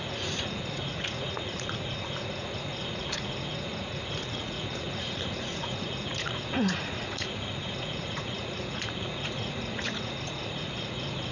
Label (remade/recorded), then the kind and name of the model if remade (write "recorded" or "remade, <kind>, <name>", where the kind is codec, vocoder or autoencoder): remade, vocoder, Vocos